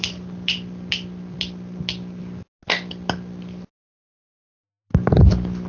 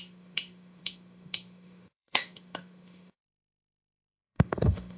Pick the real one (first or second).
first